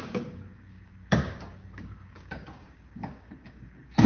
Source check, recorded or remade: remade